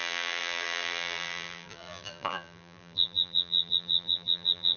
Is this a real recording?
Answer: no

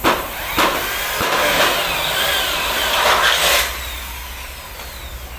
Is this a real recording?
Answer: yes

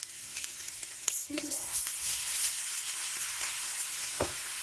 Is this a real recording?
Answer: no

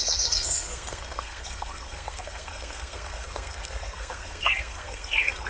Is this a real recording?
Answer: no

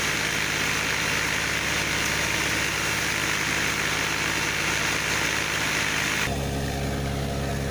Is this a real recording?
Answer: yes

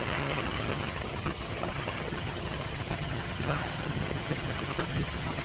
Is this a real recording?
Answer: no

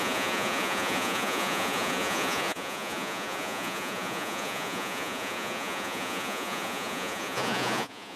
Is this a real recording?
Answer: no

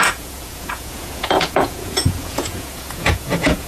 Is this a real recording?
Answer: no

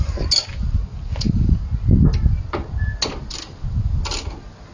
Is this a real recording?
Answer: yes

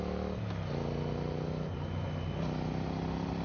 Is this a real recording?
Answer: yes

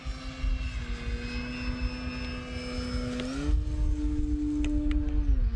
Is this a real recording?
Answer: yes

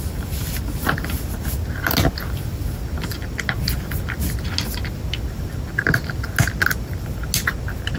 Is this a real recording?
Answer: yes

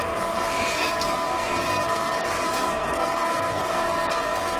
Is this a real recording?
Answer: no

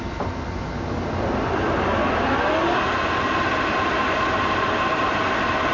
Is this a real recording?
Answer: yes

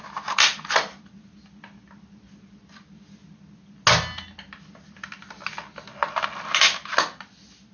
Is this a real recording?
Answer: yes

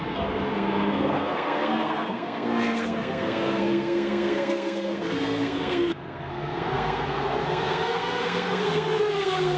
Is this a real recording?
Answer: no